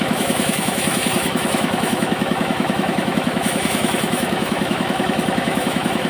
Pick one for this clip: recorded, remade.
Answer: remade